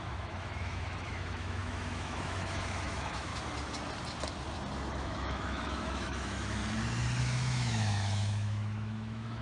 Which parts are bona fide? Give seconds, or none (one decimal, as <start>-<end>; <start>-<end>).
3.3-4.9; 6.6-7.2